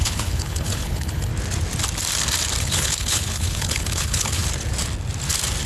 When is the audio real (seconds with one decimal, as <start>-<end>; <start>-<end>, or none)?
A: 1.3-2.6; 4.4-5.7